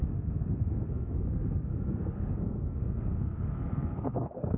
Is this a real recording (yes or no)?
no